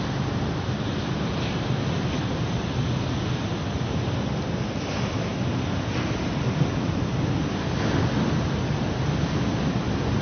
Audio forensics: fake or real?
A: real